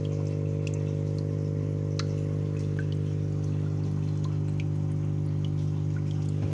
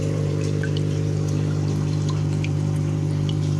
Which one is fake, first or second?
second